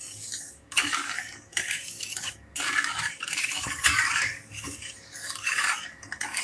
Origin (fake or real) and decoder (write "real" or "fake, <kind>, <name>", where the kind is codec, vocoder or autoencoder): fake, codec, DAC